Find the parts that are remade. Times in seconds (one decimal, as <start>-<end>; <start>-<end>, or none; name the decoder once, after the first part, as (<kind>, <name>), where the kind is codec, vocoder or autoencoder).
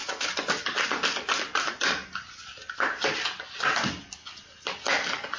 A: 0.0-3.2 (vocoder, BigVGAN v2)